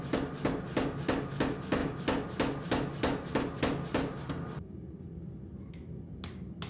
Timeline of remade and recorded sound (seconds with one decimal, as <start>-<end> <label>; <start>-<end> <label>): 0.0-6.7 recorded